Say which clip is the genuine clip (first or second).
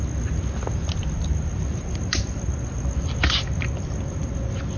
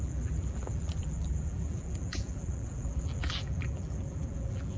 first